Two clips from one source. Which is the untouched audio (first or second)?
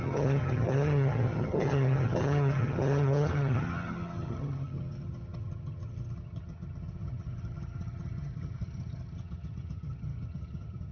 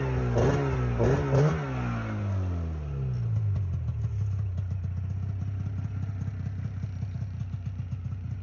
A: second